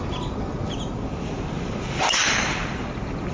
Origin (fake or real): real